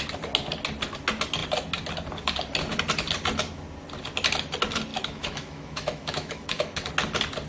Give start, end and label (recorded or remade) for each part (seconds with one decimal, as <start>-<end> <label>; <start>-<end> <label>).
0.0-4.9 recorded; 4.9-6.9 remade; 6.9-7.5 recorded